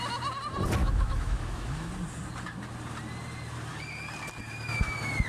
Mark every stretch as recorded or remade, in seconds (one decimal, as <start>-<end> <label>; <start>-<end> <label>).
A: 0.0-0.8 recorded; 0.8-1.9 remade; 1.9-5.3 recorded